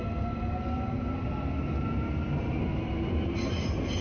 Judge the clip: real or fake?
real